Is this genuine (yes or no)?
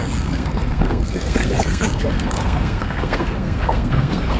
no